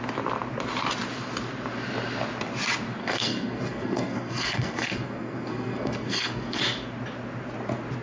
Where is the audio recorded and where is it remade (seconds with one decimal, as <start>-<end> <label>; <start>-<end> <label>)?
0.0-3.0 recorded; 3.0-6.6 remade; 6.6-8.0 recorded